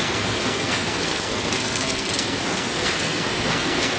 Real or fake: fake